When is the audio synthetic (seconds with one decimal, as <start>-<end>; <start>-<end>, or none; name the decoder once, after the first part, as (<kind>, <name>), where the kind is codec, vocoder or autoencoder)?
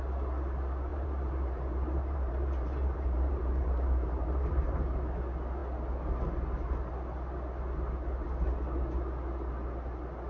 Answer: 0.9-5.0 (vocoder, BigVGAN v2)